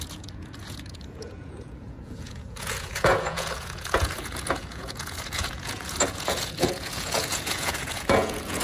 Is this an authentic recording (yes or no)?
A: no